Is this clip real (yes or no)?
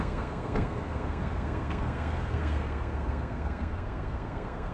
no